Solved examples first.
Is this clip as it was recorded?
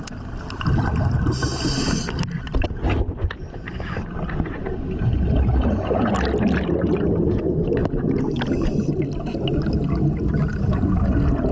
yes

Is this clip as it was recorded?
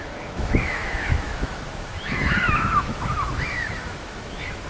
no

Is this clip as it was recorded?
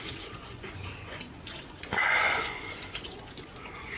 no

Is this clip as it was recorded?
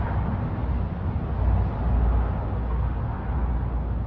yes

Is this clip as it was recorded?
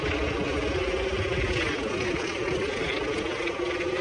yes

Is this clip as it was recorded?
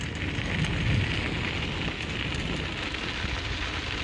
yes